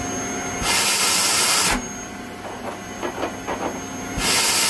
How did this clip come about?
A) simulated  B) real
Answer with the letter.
B